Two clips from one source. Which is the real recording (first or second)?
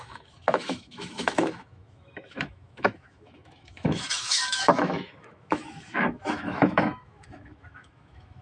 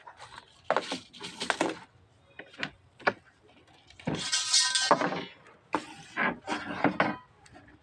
second